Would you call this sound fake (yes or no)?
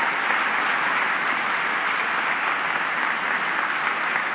yes